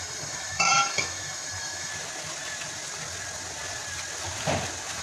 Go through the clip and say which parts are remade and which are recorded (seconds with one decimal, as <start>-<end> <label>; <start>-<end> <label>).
0.0-1.9 remade; 1.9-5.0 recorded